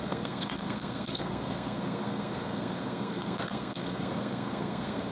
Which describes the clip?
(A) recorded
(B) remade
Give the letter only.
B